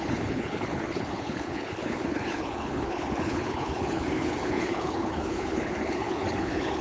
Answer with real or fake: fake